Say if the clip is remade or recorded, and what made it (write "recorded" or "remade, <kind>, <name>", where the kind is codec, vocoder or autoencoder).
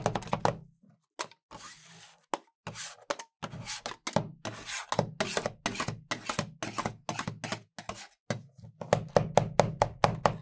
recorded